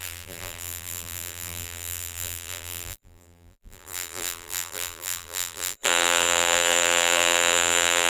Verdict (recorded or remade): remade